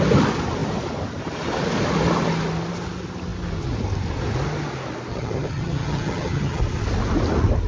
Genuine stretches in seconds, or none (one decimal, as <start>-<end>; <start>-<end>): 0.0-5.1; 6.6-7.7